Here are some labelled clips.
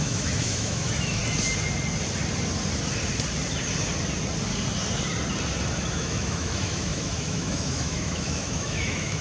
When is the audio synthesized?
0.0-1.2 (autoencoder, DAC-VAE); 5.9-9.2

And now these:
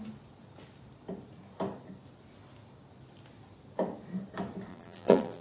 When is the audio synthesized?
4.7-5.4 (vocoder, BigVGAN v2)